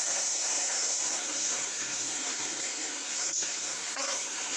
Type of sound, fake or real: fake